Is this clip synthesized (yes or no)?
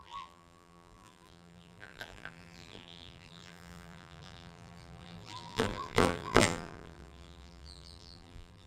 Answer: yes